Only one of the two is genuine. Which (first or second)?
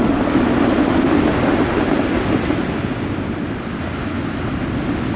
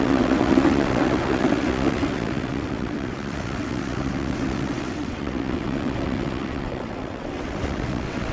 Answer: first